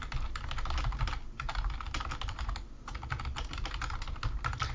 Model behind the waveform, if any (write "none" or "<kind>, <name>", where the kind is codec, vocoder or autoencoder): none